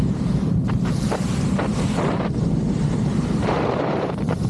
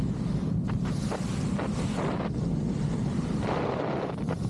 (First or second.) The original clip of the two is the second